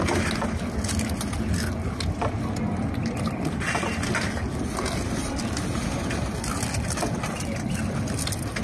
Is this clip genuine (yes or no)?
yes